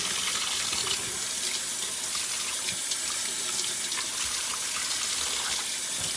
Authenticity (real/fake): real